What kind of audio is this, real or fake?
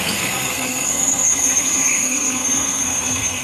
fake